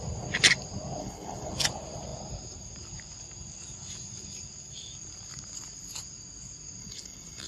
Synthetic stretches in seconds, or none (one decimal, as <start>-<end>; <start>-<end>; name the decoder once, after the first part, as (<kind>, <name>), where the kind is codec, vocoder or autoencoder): 1.0-1.5 (codec, HILCodec); 6.8-7.5